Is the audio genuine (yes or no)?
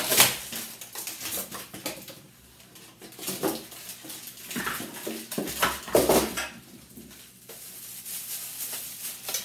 yes